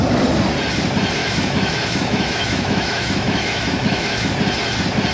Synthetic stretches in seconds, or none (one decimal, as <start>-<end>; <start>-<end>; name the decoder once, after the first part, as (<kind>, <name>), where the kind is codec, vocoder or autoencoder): 1.2-4.3 (autoencoder, DAC-VAE)